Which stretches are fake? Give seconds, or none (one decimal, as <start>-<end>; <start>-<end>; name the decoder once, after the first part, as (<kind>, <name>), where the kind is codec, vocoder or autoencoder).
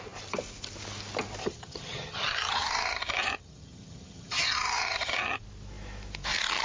1.4-5.4 (vocoder, HiFi-GAN)